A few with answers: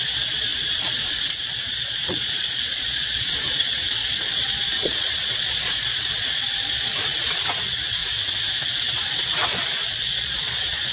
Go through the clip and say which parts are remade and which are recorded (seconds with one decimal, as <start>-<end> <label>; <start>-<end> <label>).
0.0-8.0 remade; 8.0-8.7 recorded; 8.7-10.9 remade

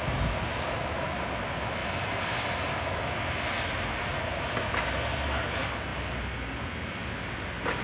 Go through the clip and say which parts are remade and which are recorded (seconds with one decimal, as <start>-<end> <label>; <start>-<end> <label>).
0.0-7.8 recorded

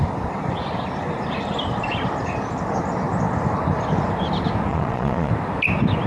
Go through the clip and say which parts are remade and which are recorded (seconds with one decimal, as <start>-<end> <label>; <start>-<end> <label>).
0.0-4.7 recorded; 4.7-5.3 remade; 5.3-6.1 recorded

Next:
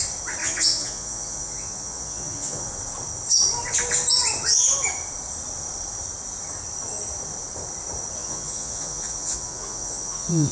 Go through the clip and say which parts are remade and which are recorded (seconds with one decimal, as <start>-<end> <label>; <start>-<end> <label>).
0.0-0.4 recorded; 0.4-2.7 remade; 2.7-8.2 recorded; 8.2-10.5 remade

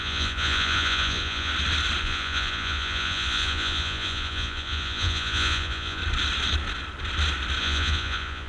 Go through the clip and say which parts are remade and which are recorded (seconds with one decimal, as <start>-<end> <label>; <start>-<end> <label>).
0.0-1.5 remade; 1.5-2.0 recorded; 2.0-6.0 remade; 6.0-7.6 recorded; 7.6-8.5 remade

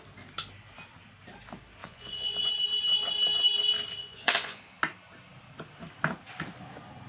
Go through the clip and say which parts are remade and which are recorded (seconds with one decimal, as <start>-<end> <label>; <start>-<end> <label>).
0.0-1.8 recorded; 1.8-2.5 remade; 2.5-4.0 recorded; 4.0-4.6 remade; 4.6-7.1 recorded

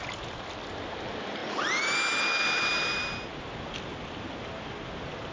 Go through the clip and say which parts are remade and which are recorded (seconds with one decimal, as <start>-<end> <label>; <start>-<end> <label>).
0.0-5.3 recorded